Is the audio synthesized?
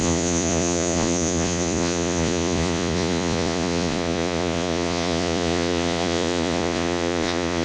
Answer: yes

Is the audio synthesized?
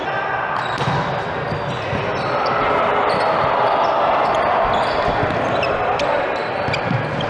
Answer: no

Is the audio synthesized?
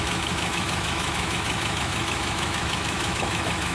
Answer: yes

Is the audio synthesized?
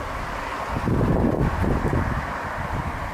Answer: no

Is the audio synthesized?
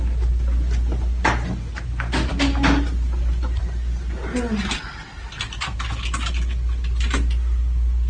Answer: no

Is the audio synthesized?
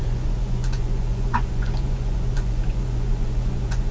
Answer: yes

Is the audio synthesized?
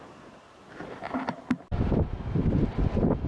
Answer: no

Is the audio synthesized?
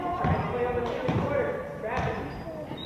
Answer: no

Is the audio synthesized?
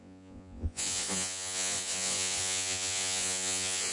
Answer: yes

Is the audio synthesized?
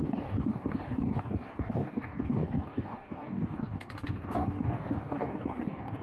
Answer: yes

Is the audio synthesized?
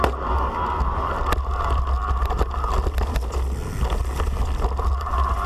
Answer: no